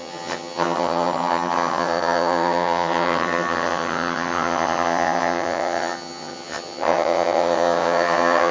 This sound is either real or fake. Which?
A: fake